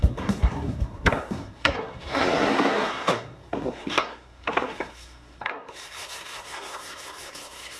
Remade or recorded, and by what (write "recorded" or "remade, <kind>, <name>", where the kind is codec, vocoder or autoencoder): remade, codec, SNAC